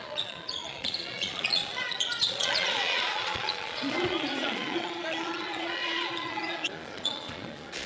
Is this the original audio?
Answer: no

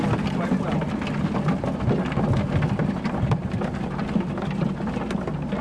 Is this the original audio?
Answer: yes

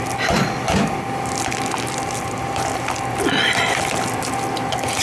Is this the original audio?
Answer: yes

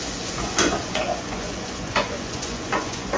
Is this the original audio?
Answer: no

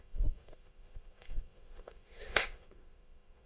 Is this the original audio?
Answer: no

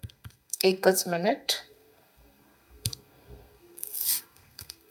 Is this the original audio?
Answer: no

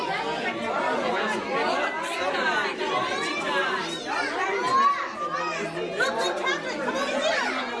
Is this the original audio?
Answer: yes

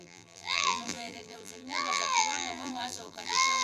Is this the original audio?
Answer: no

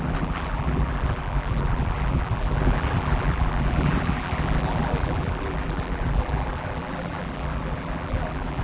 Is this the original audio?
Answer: no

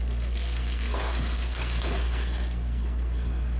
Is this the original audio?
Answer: no